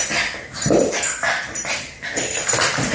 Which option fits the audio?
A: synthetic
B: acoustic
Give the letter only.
A